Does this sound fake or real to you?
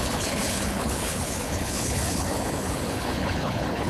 fake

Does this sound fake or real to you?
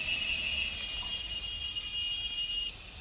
real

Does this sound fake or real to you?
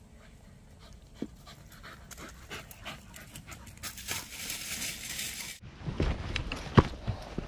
real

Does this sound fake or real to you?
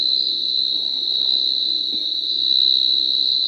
real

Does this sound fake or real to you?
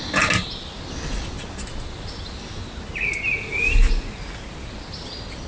real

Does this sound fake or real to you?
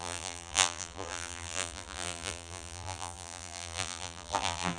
fake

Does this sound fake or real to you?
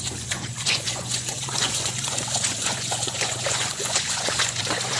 fake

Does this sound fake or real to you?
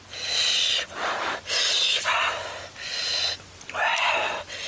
real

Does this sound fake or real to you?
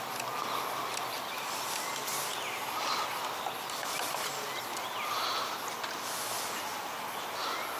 real